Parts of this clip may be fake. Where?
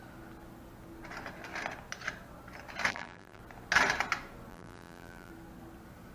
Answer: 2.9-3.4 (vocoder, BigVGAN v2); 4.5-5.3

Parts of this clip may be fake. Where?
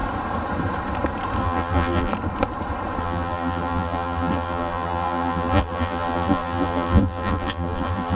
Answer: 1.4-2.1 (vocoder, BigVGAN v2); 3.0-8.2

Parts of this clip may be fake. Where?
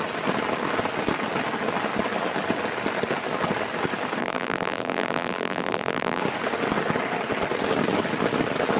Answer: 4.2-6.2 (vocoder, BigVGAN v2)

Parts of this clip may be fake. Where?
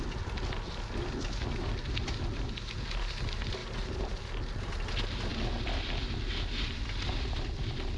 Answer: 3.6-4.2 (vocoder, BigVGAN v2)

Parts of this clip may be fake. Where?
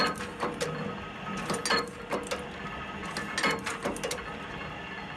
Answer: none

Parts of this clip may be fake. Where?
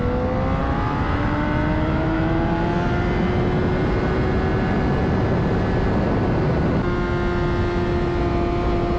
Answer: 0.6-2.7 (vocoder, BigVGAN v2)